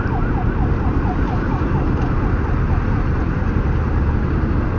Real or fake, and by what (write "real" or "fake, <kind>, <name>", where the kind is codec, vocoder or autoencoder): real